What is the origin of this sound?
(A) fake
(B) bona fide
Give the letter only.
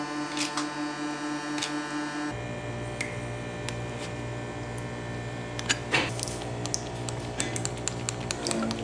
B